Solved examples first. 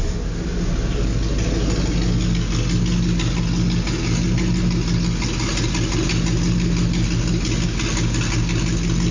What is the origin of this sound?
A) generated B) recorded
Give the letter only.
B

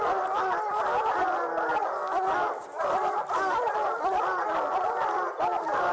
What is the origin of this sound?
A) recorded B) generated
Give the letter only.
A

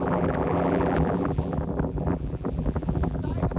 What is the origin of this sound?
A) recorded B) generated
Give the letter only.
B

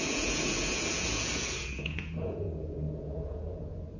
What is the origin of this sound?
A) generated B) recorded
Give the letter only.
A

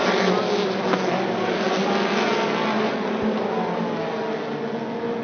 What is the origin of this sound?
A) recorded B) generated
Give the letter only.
A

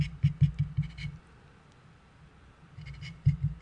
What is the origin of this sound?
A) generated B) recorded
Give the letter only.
B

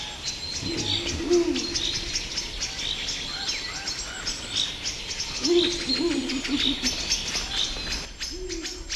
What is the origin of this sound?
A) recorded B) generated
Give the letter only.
A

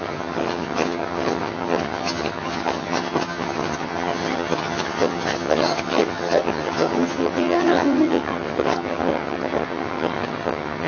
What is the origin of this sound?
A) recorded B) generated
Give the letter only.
B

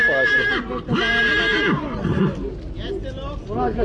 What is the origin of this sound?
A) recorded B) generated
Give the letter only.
A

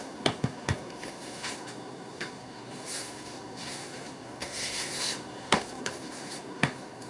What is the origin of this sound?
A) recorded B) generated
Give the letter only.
B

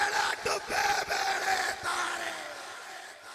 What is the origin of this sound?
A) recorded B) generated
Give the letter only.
A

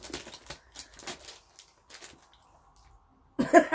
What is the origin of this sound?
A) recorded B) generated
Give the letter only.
A